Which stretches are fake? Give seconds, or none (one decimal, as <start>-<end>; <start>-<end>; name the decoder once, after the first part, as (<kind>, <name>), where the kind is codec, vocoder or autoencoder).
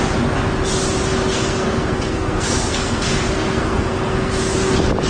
1.3-4.4 (codec, SNAC)